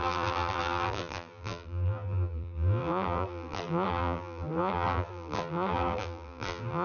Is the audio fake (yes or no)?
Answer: yes